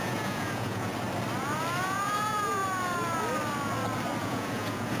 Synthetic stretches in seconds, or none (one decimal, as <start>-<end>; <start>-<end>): 0.0-0.9; 1.8-2.6; 4.2-5.0